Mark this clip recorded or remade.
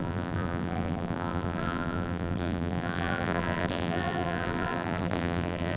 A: remade